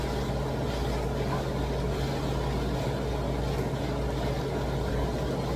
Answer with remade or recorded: recorded